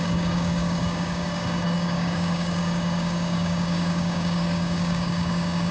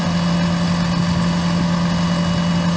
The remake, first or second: first